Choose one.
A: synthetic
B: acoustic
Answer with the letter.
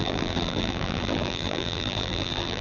A